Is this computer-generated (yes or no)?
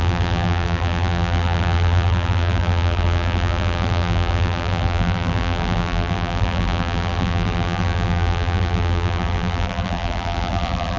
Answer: yes